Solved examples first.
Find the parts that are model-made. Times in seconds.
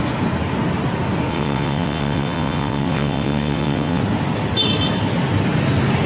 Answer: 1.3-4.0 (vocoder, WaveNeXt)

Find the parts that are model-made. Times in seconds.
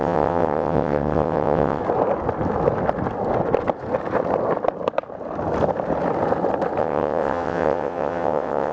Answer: 0.0-1.8 (vocoder, WaveNeXt); 6.8-8.7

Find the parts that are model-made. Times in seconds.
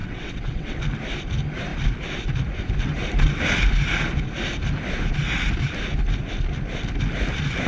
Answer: 0.0-0.8 (vocoder, WaveNeXt)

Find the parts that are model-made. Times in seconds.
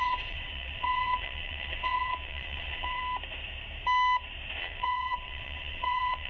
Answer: 0.0-3.0 (vocoder, WaveNeXt); 4.6-6.3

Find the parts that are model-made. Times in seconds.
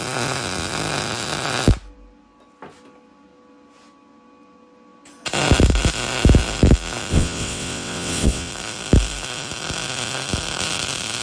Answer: 7.1-8.5 (vocoder, WaveNeXt)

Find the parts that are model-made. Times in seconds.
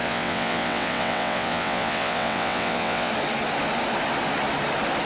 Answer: 0.0-3.1 (vocoder, WaveNeXt)